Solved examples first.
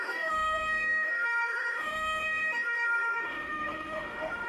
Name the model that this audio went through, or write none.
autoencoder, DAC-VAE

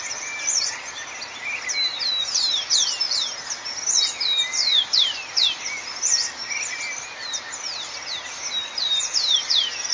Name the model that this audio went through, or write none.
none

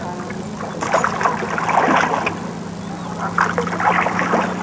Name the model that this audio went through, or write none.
none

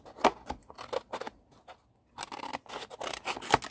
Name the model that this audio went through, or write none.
none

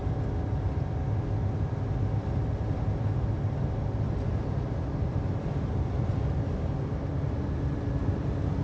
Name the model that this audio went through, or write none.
none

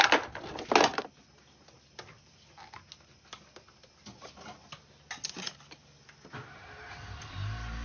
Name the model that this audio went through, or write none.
none